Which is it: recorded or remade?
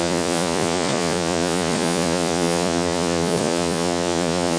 remade